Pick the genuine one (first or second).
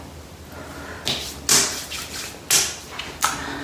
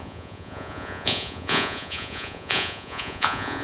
first